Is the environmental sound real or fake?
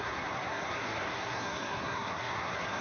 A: fake